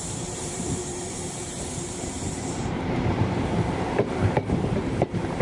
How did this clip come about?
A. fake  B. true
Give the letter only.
A